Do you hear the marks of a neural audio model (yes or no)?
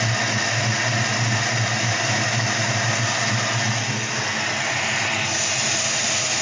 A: no